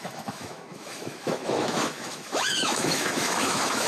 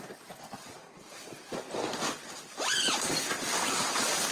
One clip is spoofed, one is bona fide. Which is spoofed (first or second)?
first